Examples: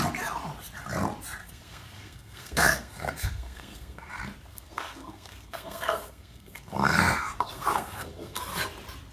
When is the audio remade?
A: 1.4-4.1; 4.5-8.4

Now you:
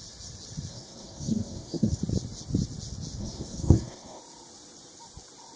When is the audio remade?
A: 0.7-2.0; 3.2-4.2

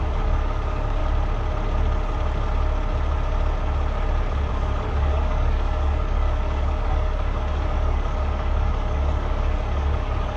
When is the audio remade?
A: 0.0-1.0; 4.5-10.4

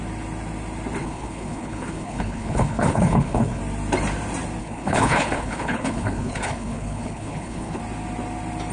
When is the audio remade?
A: 1.0-3.6; 4.6-7.8